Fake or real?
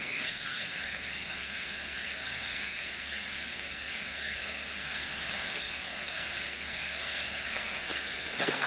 fake